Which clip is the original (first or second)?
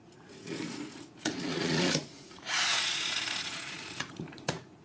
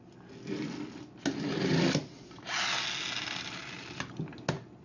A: second